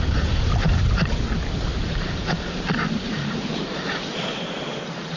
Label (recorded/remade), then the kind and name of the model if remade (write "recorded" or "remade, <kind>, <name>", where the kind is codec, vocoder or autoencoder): remade, vocoder, BigVGAN v2